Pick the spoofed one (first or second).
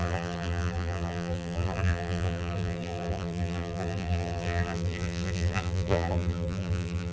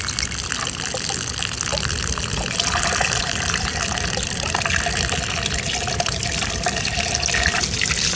first